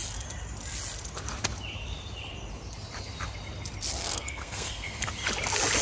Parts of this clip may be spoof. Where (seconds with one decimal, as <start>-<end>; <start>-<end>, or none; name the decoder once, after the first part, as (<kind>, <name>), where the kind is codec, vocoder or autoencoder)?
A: 4.0-5.1 (codec, SNAC)